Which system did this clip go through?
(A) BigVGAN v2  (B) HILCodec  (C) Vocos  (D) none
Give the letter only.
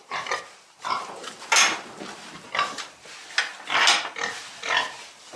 D